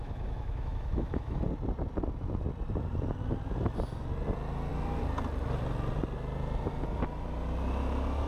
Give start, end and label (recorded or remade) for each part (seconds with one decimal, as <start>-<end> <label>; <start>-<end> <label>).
0.0-1.4 remade; 1.4-8.3 recorded